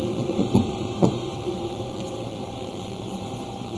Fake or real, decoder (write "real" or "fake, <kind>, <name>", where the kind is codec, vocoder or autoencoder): fake, vocoder, Vocos